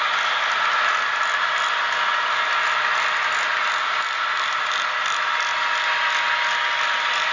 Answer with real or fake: real